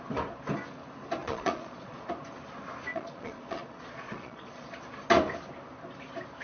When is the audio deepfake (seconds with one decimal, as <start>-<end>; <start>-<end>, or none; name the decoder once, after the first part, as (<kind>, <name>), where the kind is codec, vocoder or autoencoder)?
1.2-2.1 (vocoder, Vocos); 2.9-4.8